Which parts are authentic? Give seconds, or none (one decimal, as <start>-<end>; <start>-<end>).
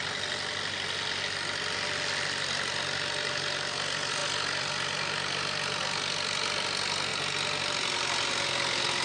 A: 0.0-9.0